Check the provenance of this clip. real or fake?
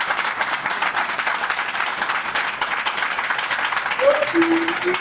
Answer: real